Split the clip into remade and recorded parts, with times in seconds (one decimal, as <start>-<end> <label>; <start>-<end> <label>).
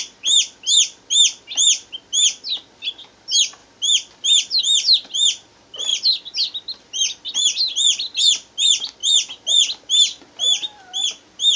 0.0-11.6 recorded